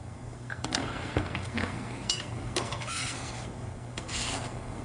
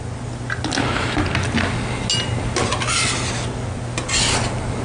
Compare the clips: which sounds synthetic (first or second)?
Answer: first